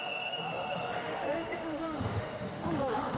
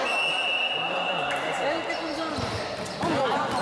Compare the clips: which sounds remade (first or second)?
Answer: first